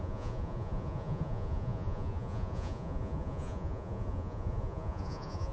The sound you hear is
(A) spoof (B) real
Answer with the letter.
A